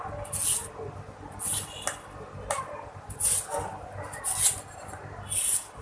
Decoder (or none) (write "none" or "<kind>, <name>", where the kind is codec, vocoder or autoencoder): none